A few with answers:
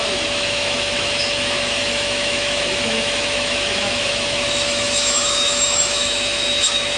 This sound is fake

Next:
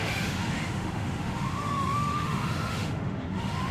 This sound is fake